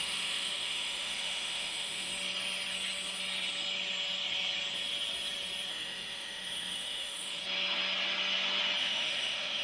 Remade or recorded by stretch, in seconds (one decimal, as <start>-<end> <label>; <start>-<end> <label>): 0.0-2.1 remade; 2.1-5.7 recorded; 5.7-7.4 remade; 7.4-8.8 recorded; 8.8-9.6 remade